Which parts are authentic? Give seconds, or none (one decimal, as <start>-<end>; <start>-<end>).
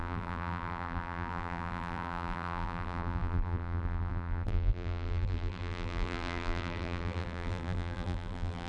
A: none